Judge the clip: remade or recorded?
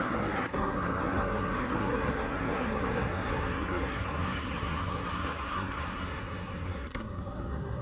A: remade